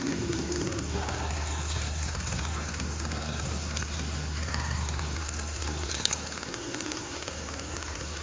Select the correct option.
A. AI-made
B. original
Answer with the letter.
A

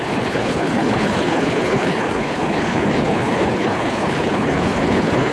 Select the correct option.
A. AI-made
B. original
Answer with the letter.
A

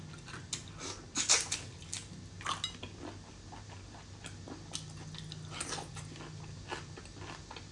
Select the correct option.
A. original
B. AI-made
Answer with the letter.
A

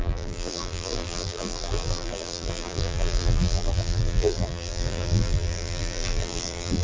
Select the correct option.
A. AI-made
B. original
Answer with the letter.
A